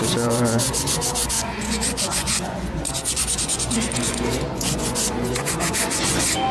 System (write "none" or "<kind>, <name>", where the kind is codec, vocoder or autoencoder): vocoder, Vocos